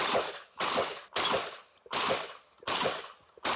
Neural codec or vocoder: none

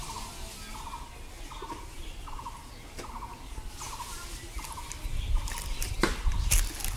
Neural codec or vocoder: none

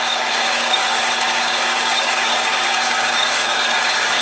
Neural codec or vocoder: codec, DAC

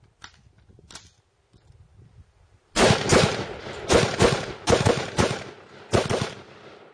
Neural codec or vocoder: none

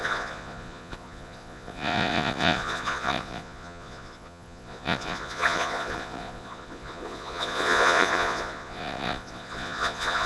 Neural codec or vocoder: vocoder, Vocos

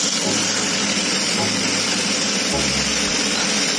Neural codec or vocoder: none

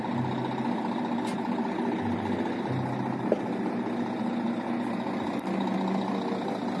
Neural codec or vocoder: none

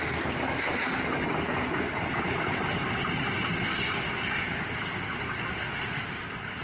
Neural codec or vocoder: none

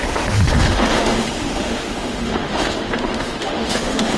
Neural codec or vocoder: autoencoder, DAC-VAE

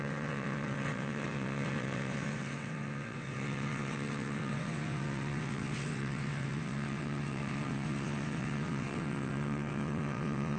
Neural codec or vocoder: vocoder, WaveNeXt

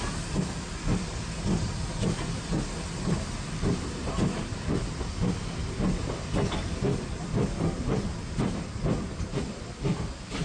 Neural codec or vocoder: none